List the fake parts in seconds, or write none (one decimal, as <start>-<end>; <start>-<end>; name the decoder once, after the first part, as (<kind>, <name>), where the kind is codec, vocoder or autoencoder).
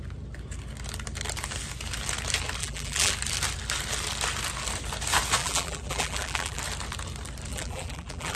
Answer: 2.6-3.1 (vocoder, BigVGAN v2); 5.4-6.6; 7.5-8.4